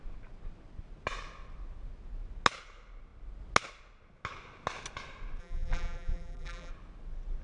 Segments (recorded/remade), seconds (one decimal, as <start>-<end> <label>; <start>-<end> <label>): 0.0-5.4 recorded; 5.4-6.7 remade; 6.7-7.4 recorded